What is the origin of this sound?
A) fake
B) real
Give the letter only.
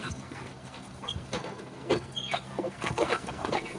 A